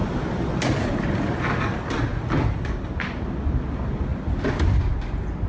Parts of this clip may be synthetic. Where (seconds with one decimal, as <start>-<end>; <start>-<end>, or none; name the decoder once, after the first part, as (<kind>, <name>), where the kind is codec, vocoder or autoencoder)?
0.0-1.5 (vocoder, BigVGAN v2); 2.1-2.7; 4.1-5.5